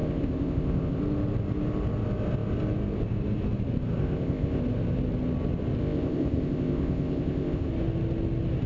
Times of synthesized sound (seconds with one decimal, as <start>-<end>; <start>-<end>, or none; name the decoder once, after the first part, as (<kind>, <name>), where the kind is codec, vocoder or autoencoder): 0.0-1.0 (codec, ZipCodec); 4.0-4.6; 5.8-7.7